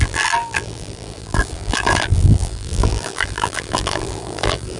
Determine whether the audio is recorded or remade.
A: remade